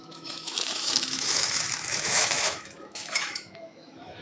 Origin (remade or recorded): remade